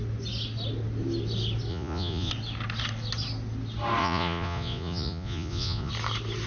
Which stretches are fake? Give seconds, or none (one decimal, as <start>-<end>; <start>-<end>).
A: 1.7-2.3; 4.0-5.9